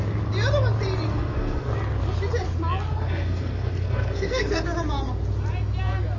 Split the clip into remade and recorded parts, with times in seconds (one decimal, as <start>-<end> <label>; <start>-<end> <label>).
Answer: 0.0-1.1 recorded; 1.1-1.7 remade; 1.7-2.9 recorded; 2.9-4.6 remade; 4.6-6.2 recorded